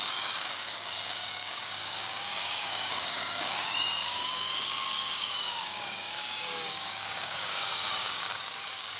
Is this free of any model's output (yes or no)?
no